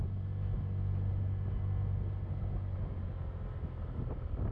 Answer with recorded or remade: recorded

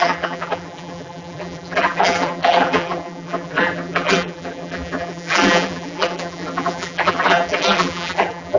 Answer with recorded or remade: remade